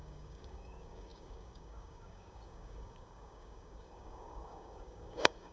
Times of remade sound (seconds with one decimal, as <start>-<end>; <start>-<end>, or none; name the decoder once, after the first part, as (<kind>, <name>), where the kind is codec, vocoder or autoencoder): 0.0-5.5 (codec, DAC)